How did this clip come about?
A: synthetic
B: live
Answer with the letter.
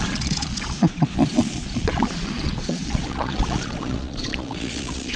A